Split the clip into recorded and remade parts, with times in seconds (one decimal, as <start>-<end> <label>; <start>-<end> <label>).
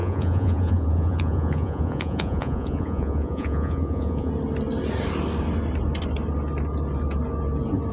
0.0-4.3 remade; 4.3-7.9 recorded